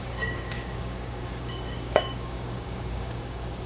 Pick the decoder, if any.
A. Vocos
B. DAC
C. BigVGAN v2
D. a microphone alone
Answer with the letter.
B